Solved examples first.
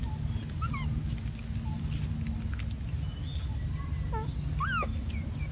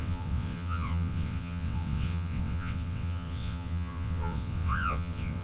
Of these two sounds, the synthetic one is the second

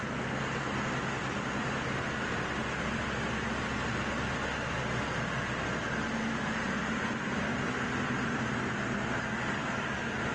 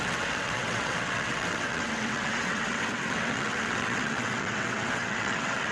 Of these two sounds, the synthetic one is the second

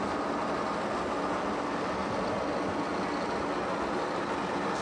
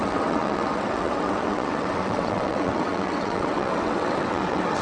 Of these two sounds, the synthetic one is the second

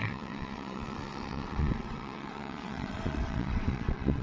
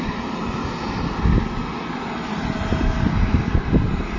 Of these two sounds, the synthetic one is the first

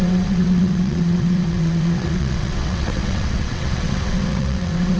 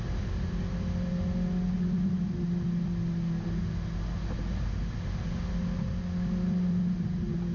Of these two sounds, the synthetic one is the first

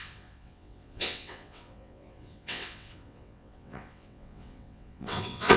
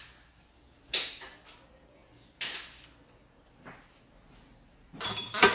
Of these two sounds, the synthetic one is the first